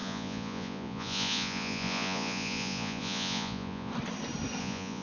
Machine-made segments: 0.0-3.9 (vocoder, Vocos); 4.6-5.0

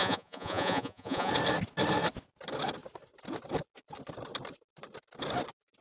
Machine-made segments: 0.0-1.3 (vocoder, Vocos)